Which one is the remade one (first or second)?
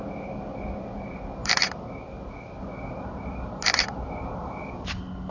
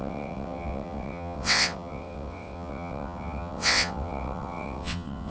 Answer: second